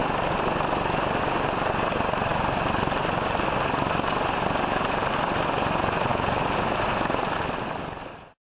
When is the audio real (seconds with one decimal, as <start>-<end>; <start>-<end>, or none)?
0.0-8.6